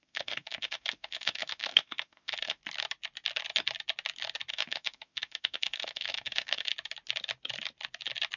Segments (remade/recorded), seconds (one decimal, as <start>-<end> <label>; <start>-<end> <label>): 0.0-2.6 remade; 2.6-4.5 recorded; 4.5-6.7 remade; 6.7-8.4 recorded